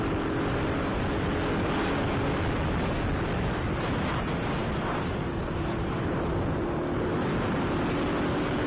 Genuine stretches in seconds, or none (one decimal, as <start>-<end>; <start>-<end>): 0.0-8.7